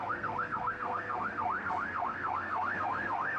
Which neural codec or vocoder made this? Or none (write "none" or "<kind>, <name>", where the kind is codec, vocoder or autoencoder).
codec, SNAC